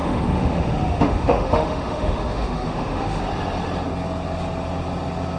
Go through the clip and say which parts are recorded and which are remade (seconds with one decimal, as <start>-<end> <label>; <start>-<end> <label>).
0.0-3.2 remade; 3.2-5.4 recorded